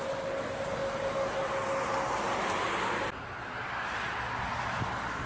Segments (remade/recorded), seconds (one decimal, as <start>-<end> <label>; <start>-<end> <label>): 0.0-5.3 recorded